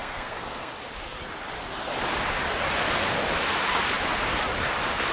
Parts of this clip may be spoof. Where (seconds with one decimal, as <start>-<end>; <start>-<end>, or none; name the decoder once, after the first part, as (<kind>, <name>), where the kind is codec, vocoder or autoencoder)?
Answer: 0.0-0.7 (codec, SNAC)